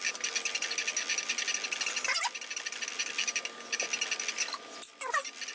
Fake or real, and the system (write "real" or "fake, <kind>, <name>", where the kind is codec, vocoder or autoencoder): real